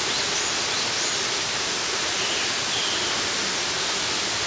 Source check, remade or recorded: recorded